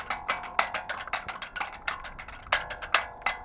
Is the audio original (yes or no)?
yes